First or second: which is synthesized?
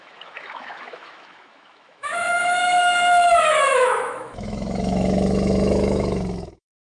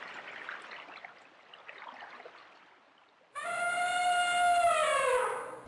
first